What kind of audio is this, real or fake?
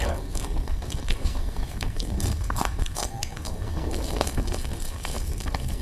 fake